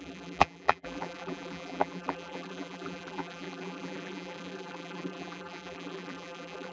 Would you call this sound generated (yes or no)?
yes